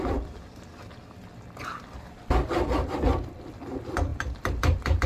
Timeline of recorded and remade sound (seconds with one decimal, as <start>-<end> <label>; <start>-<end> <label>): 0.0-4.1 recorded; 4.1-5.1 remade